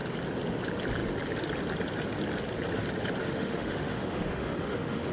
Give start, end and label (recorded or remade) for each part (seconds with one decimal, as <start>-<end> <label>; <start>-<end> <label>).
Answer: 0.0-3.2 recorded; 3.2-5.1 remade